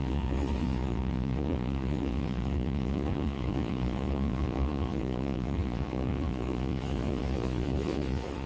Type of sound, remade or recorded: remade